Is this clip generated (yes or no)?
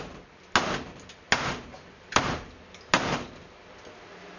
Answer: no